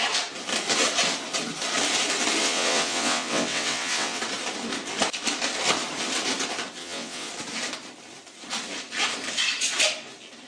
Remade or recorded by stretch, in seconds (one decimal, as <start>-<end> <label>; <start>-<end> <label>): 0.0-2.4 recorded; 2.4-4.2 remade; 4.2-6.8 recorded; 6.8-7.3 remade; 7.3-10.5 recorded